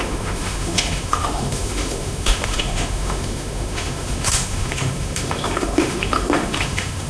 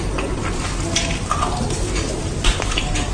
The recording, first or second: second